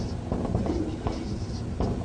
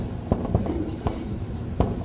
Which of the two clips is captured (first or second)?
first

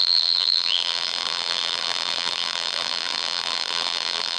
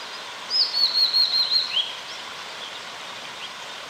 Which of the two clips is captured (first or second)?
second